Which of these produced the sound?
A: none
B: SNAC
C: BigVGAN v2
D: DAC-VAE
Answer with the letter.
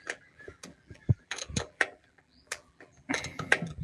C